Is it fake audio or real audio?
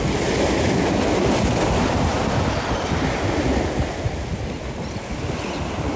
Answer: real